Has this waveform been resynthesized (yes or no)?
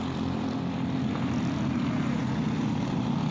no